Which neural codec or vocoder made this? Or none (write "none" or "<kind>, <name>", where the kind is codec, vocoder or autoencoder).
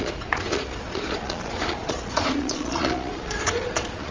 vocoder, Vocos